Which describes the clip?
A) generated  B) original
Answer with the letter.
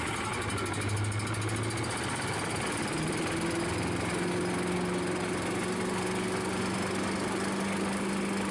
B